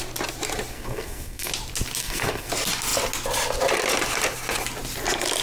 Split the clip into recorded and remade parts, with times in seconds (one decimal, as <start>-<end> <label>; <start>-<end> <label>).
0.0-0.7 recorded; 0.7-1.5 remade; 1.5-2.0 recorded; 2.0-2.5 remade; 2.5-5.4 recorded